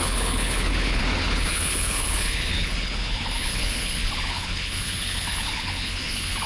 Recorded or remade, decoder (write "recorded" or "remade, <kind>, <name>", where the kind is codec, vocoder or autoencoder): remade, codec, HILCodec